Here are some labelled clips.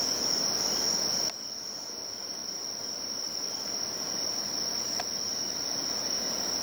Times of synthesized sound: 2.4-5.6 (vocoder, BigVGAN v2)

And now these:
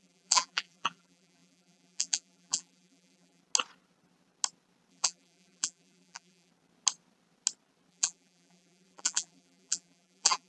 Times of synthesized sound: 0.0-3.4 (vocoder, BigVGAN v2); 4.9-6.5; 7.9-10.5

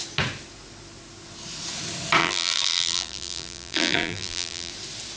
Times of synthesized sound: 2.2-4.7 (vocoder, BigVGAN v2)